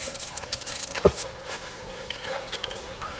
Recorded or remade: remade